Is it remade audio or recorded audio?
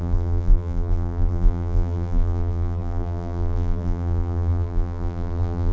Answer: remade